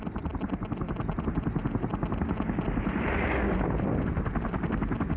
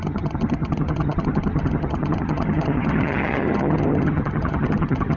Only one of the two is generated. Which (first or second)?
second